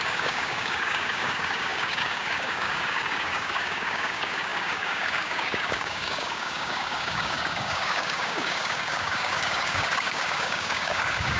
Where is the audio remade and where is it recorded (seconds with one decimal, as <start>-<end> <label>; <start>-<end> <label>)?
0.0-11.4 remade